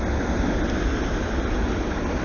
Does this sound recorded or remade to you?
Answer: recorded